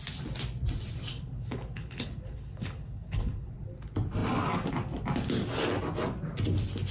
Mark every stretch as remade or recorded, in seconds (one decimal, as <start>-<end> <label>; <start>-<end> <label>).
0.0-1.1 recorded; 1.1-3.5 remade; 3.5-6.9 recorded